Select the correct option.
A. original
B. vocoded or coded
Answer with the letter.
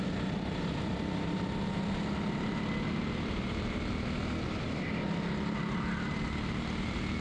A